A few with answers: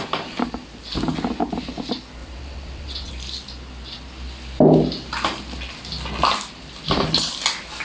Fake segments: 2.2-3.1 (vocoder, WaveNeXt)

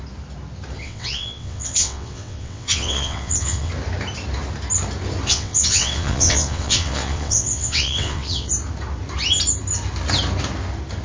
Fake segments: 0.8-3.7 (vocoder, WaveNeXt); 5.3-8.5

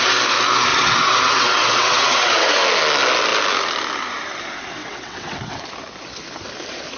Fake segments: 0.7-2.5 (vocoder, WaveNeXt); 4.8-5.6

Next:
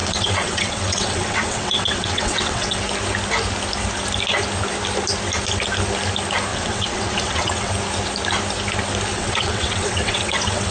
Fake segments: 0.0-2.8 (vocoder, WaveNeXt); 6.5-7.7; 9.1-10.7

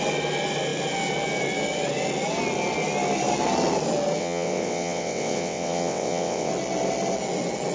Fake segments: 4.2-6.5 (vocoder, WaveNeXt)

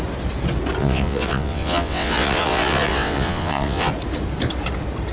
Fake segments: 0.8-3.9 (vocoder, WaveNeXt)

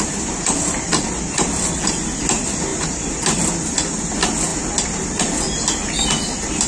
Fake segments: none

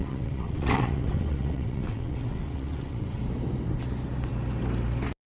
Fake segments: 0.0-3.2 (vocoder, WaveNeXt)